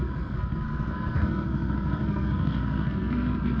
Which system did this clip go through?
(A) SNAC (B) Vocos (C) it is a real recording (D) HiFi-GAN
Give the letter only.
A